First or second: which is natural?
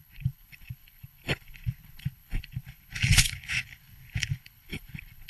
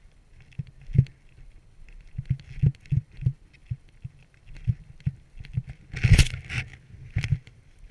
second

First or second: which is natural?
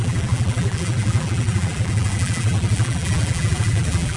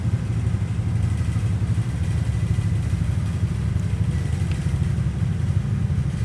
second